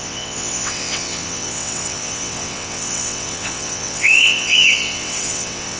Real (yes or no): no